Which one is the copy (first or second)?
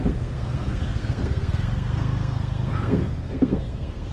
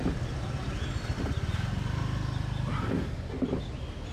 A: first